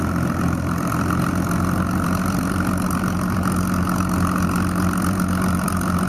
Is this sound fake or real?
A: fake